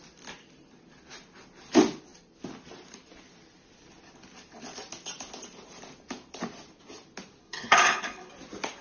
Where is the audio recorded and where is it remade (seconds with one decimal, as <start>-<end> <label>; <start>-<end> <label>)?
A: 0.0-7.4 recorded; 7.4-8.3 remade; 8.3-8.8 recorded